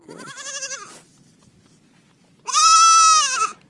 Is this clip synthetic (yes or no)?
no